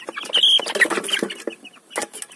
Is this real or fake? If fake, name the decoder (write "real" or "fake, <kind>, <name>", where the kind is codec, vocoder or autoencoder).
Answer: real